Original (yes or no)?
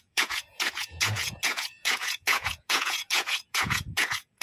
no